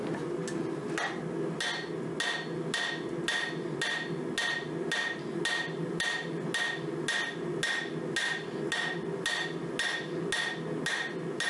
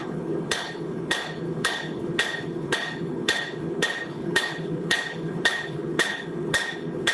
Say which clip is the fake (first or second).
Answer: second